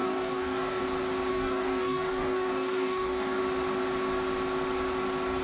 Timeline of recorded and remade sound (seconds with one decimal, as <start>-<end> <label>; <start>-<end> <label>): 0.0-0.8 remade; 0.8-1.3 recorded; 1.3-3.4 remade; 3.4-5.4 recorded